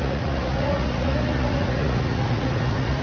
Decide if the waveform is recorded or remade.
remade